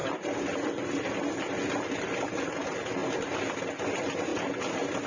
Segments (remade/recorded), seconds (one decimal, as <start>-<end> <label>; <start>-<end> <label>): 0.0-5.1 recorded